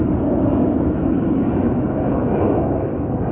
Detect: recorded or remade remade